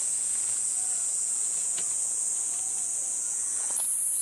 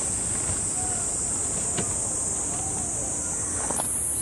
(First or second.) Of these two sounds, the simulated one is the first